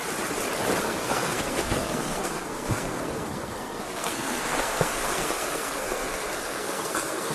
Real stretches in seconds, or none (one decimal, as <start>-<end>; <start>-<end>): 0.0-0.8